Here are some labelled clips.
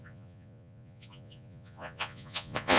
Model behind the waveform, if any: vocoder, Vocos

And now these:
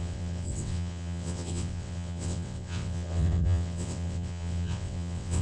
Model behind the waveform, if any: vocoder, WaveNeXt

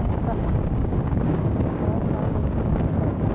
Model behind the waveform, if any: codec, DAC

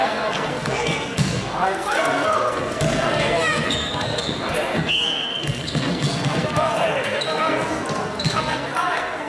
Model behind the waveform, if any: codec, SNAC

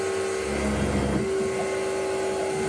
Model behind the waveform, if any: none